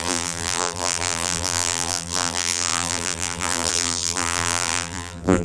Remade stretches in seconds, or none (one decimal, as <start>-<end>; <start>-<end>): 0.0-5.4